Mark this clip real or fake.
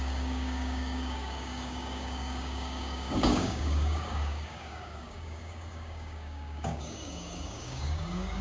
fake